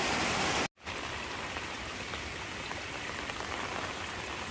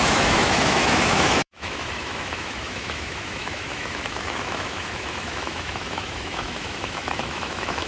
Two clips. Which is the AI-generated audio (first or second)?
second